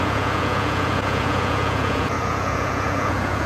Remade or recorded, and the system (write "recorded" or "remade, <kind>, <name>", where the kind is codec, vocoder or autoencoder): remade, vocoder, Vocos